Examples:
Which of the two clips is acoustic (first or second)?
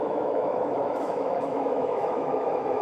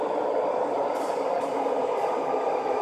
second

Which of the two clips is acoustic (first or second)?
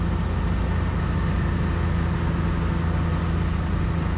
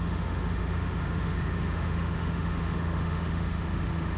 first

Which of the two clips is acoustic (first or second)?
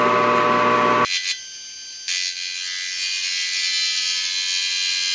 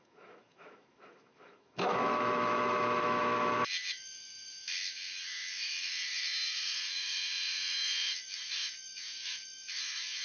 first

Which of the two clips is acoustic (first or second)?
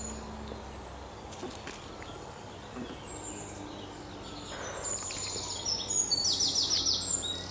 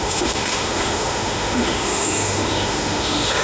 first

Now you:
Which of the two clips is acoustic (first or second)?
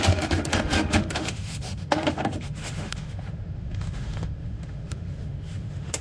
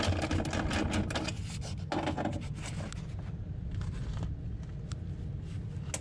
second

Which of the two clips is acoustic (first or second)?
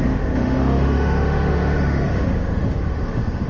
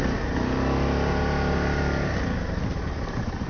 second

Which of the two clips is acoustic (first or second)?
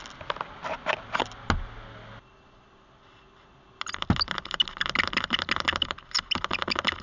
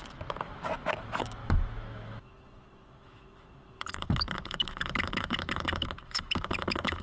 first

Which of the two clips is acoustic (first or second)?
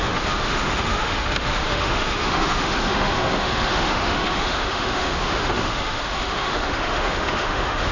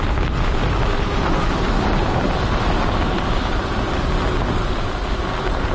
second